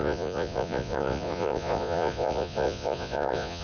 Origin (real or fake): fake